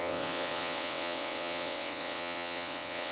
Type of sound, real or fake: fake